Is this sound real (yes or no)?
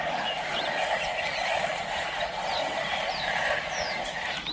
yes